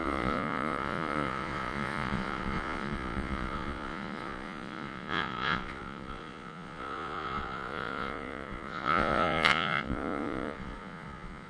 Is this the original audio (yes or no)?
no